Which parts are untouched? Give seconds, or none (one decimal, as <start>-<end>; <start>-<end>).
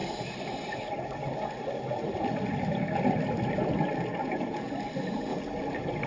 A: 0.0-4.2; 4.7-6.1